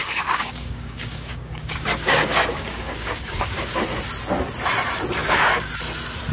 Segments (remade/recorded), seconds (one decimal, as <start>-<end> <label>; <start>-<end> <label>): 0.0-3.8 remade; 3.8-5.2 recorded; 5.2-5.7 remade; 5.7-6.3 recorded